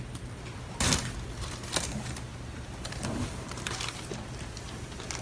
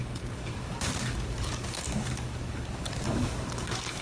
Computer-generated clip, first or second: second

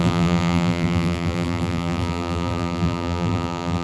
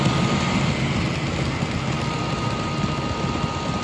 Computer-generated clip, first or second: first